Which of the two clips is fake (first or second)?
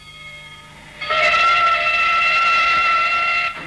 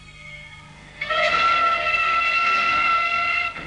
second